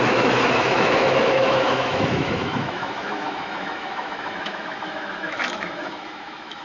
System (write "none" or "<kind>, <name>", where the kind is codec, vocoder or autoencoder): autoencoder, DAC-VAE